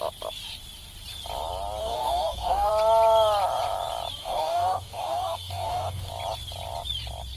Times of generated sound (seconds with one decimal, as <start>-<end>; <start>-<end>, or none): 1.8-2.7; 4.2-6.1